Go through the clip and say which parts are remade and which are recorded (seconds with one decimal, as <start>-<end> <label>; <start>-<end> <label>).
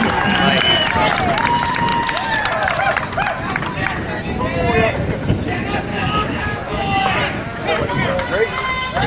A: 0.0-5.9 recorded; 5.9-6.7 remade; 6.7-9.1 recorded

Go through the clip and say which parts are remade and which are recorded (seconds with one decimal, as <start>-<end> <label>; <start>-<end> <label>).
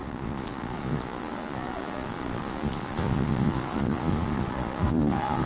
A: 0.0-5.5 remade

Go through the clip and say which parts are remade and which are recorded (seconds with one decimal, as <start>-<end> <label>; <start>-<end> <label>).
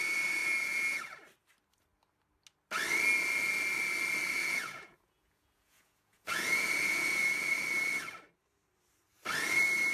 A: 0.0-0.4 recorded; 0.4-1.0 remade; 1.0-4.4 recorded; 4.4-7.4 remade; 7.4-9.9 recorded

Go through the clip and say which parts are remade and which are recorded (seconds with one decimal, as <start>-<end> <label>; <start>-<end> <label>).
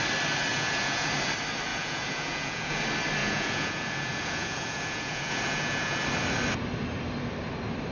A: 0.0-0.5 recorded; 0.5-1.1 remade; 1.1-1.7 recorded; 1.7-2.8 remade; 2.8-3.2 recorded; 3.2-6.0 remade; 6.0-7.9 recorded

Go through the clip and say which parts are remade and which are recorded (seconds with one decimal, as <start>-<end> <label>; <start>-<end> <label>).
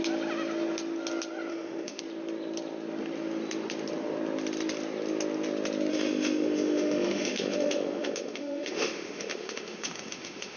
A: 0.0-1.5 recorded; 1.5-2.0 remade; 2.0-5.9 recorded; 5.9-10.6 remade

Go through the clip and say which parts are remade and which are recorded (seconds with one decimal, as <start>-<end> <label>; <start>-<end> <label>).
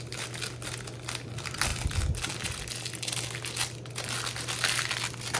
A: 0.0-5.4 recorded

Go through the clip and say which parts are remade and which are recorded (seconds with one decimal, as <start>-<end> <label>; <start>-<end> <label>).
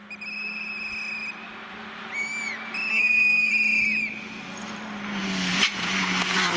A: 0.0-2.9 recorded; 2.9-3.5 remade; 3.5-6.6 recorded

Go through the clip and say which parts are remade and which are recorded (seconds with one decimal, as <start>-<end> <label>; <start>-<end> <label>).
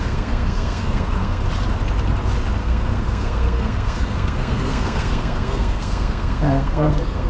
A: 0.0-1.4 remade; 1.4-2.6 recorded; 2.6-7.3 remade